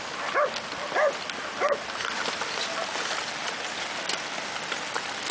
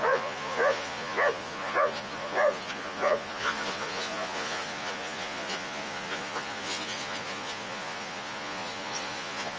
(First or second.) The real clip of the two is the first